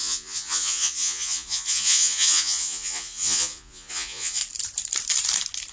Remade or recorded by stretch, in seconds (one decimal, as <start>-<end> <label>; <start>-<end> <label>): 0.0-4.4 remade; 4.4-5.7 recorded